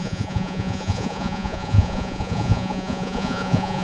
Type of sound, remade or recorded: remade